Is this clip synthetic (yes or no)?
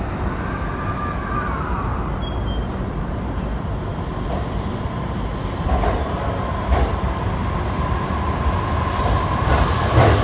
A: no